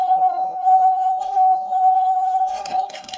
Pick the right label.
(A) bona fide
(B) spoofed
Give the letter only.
B